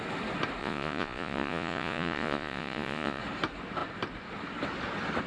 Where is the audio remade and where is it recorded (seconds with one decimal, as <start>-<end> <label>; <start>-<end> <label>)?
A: 0.0-0.6 recorded; 0.6-3.2 remade; 3.2-5.3 recorded